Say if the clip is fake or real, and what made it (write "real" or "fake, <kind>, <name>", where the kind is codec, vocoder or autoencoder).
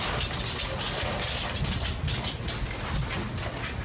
real